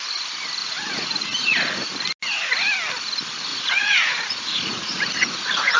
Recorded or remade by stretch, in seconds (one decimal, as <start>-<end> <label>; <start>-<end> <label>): 0.0-0.6 recorded; 0.6-1.9 remade; 1.9-3.5 recorded; 3.5-5.8 remade